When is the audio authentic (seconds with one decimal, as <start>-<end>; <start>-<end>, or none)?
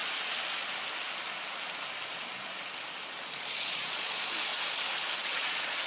0.0-3.5; 4.5-5.3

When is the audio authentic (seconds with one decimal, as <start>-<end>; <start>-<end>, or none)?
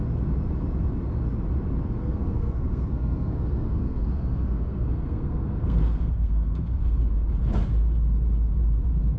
0.0-2.0; 7.0-9.2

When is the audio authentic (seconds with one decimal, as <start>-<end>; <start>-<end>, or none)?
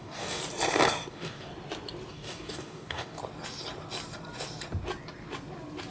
0.4-1.1; 1.5-2.1; 3.2-5.9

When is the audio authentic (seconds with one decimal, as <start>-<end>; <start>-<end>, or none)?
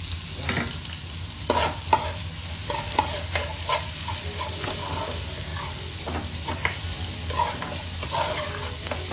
0.0-9.1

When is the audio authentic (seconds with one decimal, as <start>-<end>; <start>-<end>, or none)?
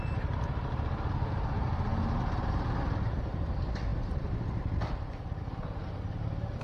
0.0-6.6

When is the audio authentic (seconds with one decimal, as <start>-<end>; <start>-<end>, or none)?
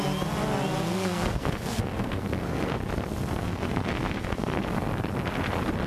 0.0-0.9; 2.8-3.2; 4.9-5.9